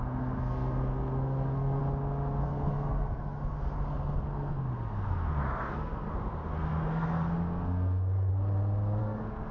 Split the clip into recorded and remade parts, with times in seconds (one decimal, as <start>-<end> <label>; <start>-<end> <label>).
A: 0.0-1.8 remade; 1.8-2.4 recorded; 2.4-8.3 remade; 8.3-9.0 recorded; 9.0-9.5 remade